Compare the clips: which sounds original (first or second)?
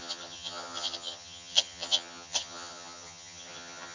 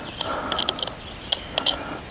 second